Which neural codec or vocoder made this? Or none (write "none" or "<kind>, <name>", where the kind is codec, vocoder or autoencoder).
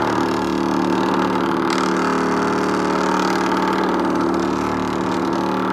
none